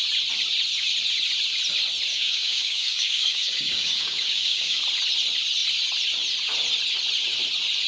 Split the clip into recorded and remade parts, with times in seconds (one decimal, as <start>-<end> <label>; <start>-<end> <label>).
0.0-2.1 recorded; 2.1-4.8 remade; 4.8-7.9 recorded